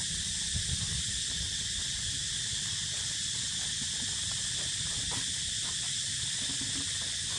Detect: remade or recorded recorded